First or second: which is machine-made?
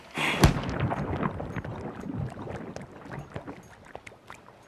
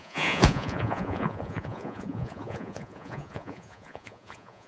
second